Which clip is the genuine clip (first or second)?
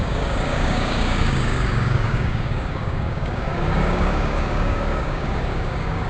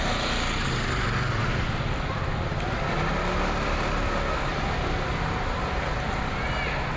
second